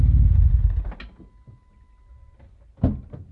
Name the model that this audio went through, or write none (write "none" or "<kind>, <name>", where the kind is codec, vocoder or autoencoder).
none